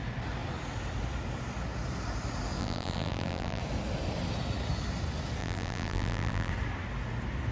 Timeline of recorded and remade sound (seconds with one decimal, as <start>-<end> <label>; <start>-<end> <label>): 0.0-2.6 recorded; 2.6-3.6 remade; 3.6-5.4 recorded; 5.4-6.5 remade; 6.5-7.5 recorded